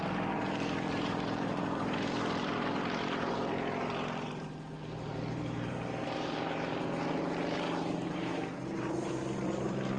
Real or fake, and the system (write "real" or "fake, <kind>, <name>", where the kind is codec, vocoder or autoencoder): fake, vocoder, BigVGAN v2